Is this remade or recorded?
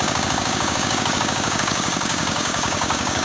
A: remade